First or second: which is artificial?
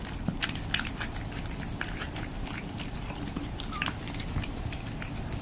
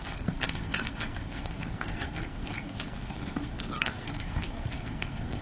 second